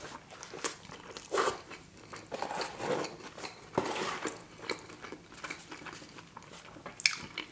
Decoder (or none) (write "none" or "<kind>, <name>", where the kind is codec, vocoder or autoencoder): none